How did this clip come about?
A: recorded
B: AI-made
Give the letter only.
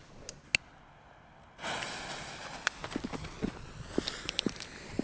A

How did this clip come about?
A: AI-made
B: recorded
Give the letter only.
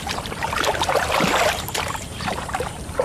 A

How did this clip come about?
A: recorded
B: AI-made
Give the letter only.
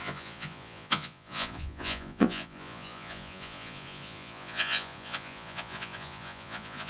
B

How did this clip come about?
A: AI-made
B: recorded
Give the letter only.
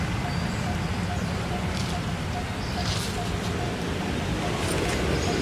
B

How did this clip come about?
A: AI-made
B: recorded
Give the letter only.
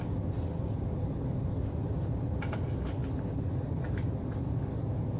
B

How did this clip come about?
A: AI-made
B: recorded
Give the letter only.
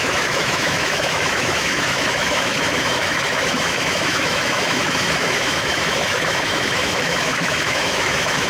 A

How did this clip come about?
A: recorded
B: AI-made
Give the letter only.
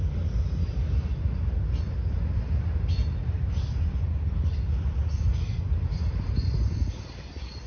A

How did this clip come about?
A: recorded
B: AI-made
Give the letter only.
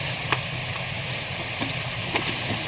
A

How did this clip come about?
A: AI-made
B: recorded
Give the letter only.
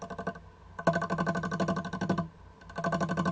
B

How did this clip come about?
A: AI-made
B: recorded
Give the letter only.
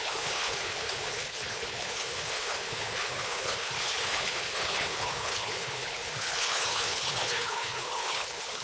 A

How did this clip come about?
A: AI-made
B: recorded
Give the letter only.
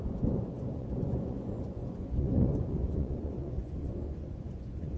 A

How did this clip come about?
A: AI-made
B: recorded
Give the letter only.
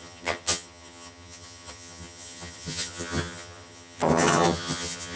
A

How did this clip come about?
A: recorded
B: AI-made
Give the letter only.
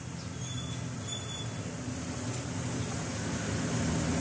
A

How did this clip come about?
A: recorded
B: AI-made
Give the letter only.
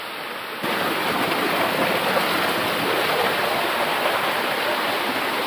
A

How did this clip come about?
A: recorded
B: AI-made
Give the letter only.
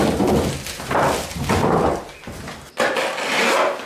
A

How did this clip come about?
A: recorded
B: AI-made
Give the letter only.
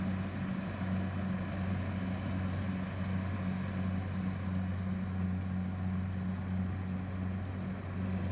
A